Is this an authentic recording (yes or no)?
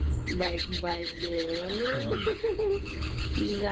no